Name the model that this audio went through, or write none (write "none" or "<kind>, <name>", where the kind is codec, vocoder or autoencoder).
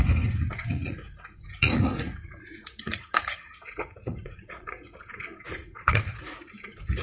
vocoder, Vocos